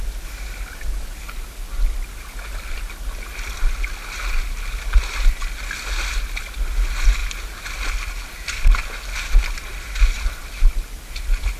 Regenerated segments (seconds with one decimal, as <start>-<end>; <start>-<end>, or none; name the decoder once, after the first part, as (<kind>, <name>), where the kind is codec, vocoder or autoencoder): none